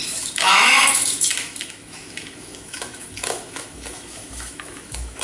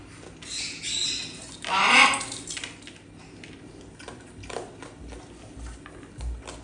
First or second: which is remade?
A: first